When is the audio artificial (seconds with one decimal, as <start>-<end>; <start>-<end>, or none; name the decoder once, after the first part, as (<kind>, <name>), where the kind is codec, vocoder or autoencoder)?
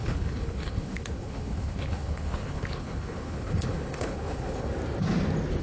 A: 0.0-4.7 (codec, HILCodec)